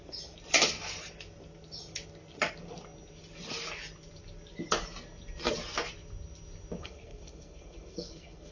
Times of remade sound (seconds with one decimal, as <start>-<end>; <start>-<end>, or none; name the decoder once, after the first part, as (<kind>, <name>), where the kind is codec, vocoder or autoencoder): 6.8-8.5 (codec, SNAC)